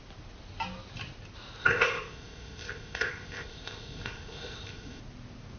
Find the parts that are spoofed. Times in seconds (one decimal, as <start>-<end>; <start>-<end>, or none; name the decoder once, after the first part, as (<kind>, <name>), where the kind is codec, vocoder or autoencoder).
1.6-5.0 (codec, ZipCodec)